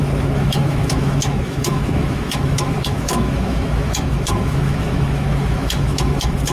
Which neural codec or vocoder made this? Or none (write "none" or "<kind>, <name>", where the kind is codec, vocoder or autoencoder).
autoencoder, DAC-VAE